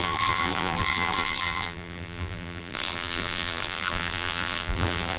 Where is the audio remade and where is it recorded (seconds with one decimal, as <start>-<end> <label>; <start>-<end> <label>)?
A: 0.0-5.2 remade